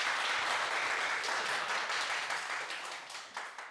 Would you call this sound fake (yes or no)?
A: no